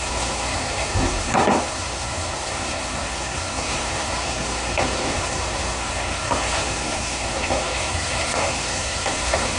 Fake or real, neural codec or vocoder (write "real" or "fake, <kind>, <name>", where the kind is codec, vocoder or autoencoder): fake, codec, SNAC